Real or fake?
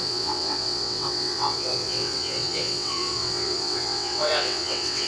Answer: fake